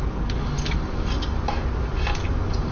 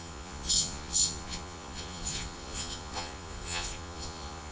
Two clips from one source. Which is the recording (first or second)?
first